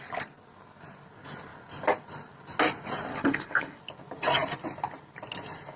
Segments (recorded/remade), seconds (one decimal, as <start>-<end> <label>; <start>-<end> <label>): 0.0-3.1 recorded; 3.1-3.8 remade; 3.8-5.8 recorded